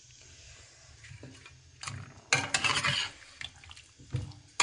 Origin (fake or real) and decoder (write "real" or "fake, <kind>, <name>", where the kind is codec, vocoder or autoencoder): real